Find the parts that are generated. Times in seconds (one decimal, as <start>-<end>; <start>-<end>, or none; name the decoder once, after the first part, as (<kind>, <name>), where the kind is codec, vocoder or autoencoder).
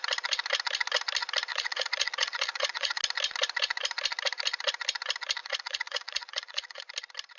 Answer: 1.5-3.0 (vocoder, Vocos); 5.4-6.8